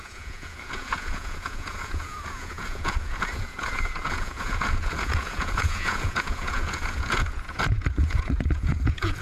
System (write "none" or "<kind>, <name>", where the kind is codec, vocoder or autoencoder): vocoder, Vocos